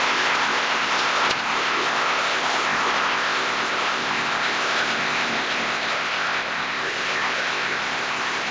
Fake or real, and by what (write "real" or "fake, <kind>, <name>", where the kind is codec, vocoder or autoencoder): fake, codec, ZipCodec